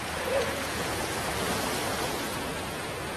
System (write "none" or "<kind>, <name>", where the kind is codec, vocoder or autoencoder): vocoder, Vocos